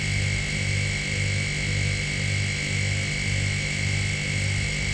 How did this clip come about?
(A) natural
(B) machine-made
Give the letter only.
A